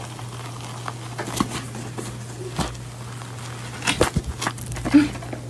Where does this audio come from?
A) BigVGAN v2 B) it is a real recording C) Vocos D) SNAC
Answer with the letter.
B